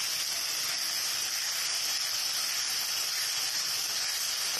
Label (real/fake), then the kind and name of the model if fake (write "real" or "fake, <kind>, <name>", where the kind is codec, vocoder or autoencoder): real